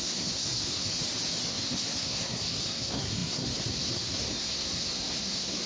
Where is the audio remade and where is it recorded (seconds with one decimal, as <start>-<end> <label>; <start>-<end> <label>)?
0.0-0.9 remade; 0.9-1.5 recorded; 1.5-5.7 remade